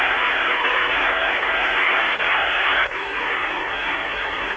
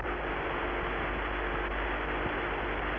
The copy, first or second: first